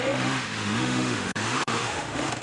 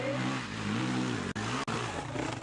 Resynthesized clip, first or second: first